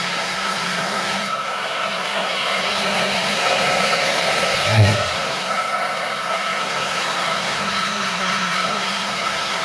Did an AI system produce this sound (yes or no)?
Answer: yes